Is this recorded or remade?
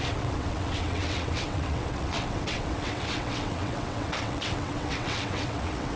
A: remade